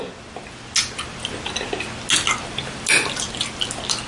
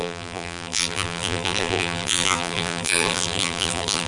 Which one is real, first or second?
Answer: first